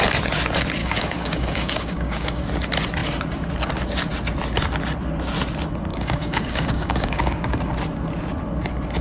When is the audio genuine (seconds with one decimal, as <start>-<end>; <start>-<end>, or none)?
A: 0.0-0.8; 2.4-5.9; 7.7-9.0